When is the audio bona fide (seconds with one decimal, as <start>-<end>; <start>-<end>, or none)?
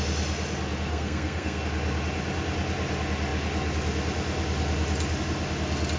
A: 0.0-0.9; 1.6-6.0